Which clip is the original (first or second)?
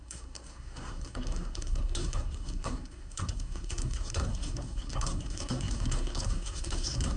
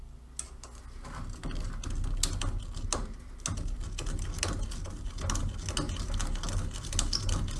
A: second